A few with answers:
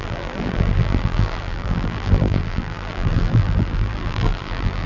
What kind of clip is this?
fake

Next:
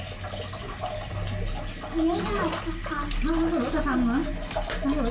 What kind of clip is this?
real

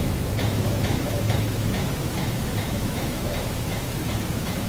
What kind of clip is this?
fake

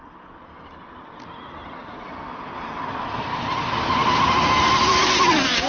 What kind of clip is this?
real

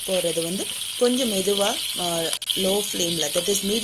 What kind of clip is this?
real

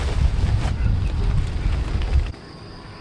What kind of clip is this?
real